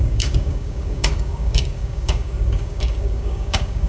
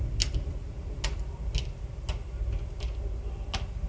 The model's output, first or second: first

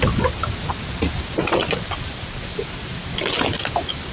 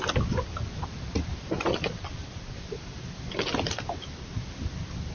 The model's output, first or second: second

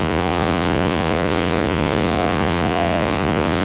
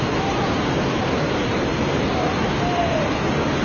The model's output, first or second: first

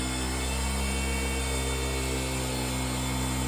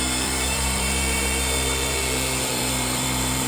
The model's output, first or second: second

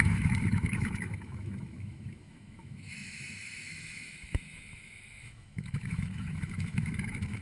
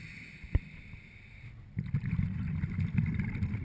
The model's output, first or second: first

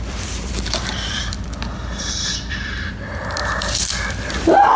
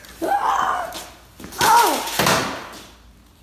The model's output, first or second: first